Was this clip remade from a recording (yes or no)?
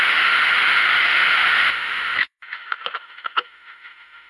yes